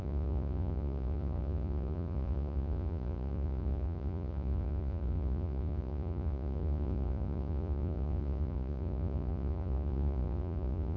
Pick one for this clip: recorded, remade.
remade